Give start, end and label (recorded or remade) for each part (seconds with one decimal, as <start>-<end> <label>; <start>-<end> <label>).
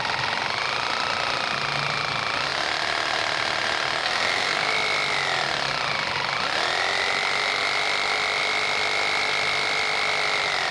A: 0.0-4.0 recorded; 4.0-4.7 remade; 4.7-10.7 recorded